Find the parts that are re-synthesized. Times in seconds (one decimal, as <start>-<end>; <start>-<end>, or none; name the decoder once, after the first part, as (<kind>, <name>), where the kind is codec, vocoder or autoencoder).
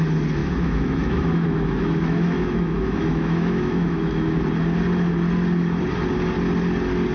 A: 0.4-4.4 (autoencoder, DAC-VAE)